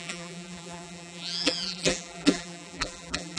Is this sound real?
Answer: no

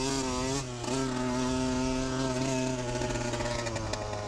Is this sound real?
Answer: yes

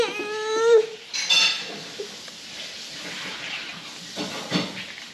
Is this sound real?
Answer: yes